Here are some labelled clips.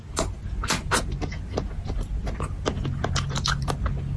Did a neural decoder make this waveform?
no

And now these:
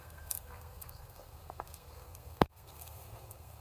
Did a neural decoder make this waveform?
yes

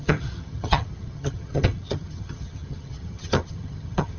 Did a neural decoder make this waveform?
yes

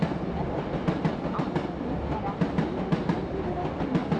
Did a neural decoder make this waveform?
no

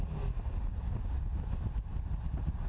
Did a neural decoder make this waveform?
no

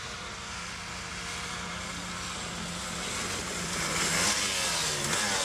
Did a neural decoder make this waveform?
no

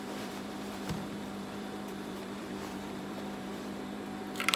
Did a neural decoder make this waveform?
yes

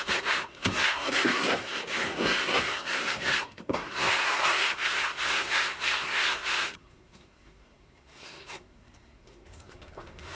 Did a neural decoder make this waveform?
yes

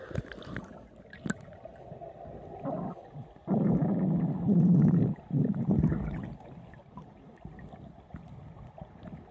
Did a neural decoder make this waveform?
no